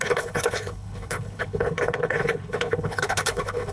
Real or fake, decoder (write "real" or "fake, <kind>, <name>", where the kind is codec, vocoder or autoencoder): fake, codec, HILCodec